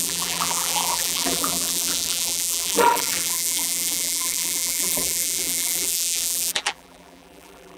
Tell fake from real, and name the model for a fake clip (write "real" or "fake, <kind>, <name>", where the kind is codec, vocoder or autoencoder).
fake, vocoder, BigVGAN v2